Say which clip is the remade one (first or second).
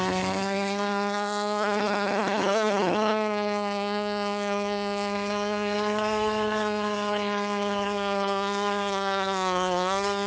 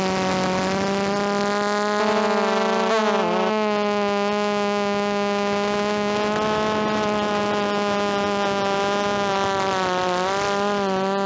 first